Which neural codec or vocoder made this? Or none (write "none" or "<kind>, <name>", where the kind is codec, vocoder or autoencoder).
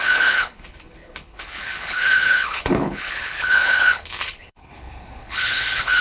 codec, HILCodec